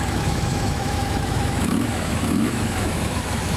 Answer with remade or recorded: remade